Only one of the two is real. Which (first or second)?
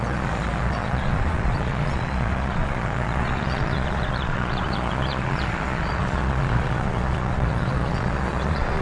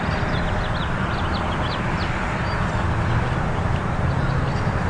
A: second